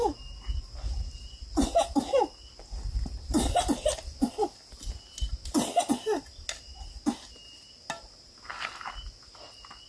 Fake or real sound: real